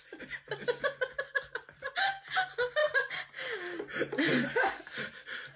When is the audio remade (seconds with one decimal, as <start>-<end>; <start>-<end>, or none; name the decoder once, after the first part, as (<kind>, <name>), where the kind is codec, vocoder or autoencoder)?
none